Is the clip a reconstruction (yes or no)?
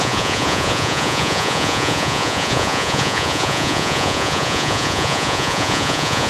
yes